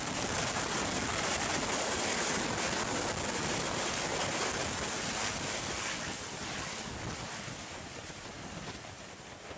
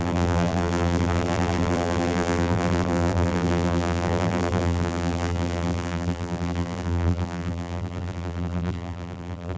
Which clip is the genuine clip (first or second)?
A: first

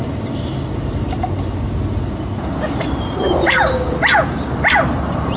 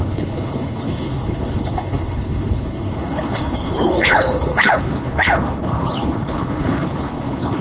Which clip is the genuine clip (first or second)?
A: first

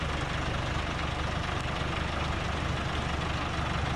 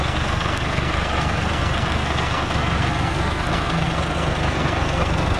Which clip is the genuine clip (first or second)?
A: first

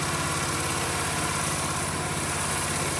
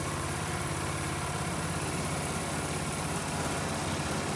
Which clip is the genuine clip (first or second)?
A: first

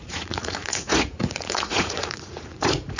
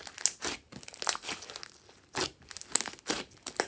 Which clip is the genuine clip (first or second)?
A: second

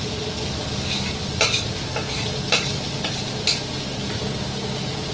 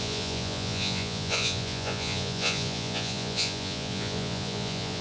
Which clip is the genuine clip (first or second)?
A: first